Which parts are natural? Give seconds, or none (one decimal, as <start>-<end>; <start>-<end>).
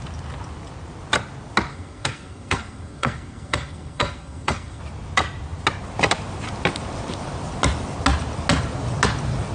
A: 0.0-1.7; 4.8-9.5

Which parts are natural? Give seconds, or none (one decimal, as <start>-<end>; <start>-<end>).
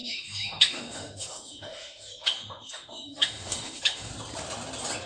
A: 4.1-5.1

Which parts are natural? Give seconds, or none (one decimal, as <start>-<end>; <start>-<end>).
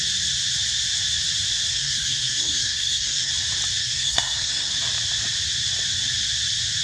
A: 0.0-1.7; 3.3-3.8; 4.7-6.8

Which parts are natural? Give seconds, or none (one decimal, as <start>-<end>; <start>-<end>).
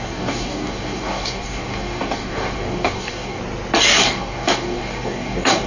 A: 3.4-3.9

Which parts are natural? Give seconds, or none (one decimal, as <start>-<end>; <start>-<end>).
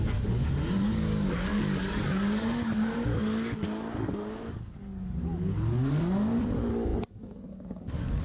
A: none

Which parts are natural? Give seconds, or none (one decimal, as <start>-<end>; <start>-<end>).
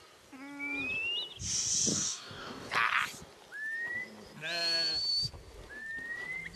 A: 0.0-1.9; 2.7-6.6